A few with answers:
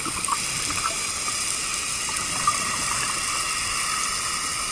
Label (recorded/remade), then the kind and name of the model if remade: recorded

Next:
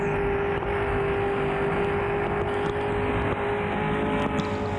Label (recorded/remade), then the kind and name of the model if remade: recorded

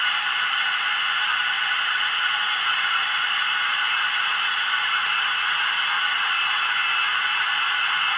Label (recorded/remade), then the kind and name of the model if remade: recorded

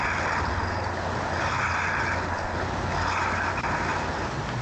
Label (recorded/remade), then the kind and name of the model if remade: recorded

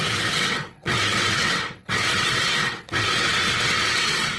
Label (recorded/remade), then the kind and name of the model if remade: remade, vocoder, WaveNeXt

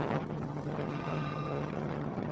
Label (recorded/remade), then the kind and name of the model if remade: remade, vocoder, HiFi-GAN